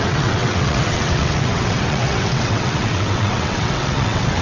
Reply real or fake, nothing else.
fake